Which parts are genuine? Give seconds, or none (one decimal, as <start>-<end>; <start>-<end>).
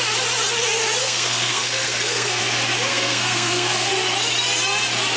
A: 0.0-1.0; 2.4-2.9; 3.9-5.2